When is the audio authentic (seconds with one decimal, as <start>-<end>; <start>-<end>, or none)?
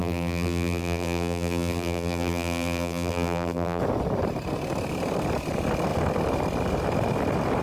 3.8-7.6